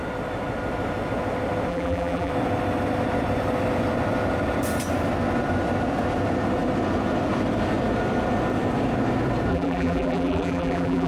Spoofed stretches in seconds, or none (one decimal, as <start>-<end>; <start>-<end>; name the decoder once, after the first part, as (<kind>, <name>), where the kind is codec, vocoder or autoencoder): 1.7-2.3 (vocoder, BigVGAN v2); 9.5-11.1